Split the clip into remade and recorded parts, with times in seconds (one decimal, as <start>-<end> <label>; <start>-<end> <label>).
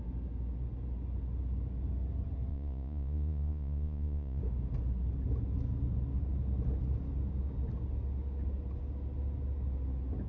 0.0-2.5 recorded; 2.5-4.4 remade; 4.4-10.3 recorded